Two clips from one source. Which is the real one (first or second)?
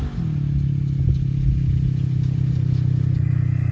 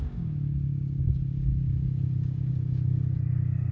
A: first